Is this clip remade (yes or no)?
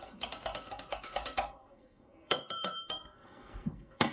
yes